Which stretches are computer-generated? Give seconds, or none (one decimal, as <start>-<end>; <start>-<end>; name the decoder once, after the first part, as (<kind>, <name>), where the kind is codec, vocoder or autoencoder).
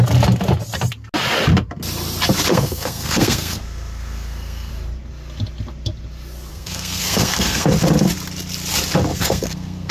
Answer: 2.5-4.7 (codec, SNAC); 6.5-7.7; 9.1-9.9